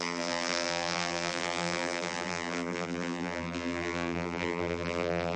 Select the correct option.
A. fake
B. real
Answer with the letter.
A